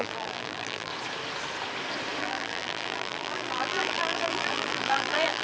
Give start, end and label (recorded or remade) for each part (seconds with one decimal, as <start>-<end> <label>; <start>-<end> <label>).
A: 0.0-0.9 remade; 0.9-2.2 recorded; 2.2-5.4 remade